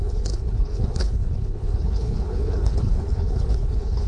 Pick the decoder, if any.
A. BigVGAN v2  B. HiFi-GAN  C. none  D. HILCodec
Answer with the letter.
D